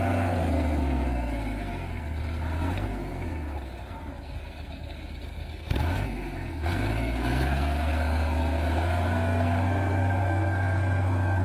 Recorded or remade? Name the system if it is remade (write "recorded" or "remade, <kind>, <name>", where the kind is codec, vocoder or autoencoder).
remade, codec, SNAC